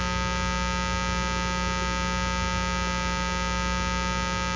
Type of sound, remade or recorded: recorded